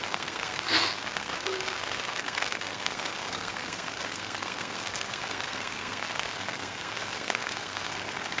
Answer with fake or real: fake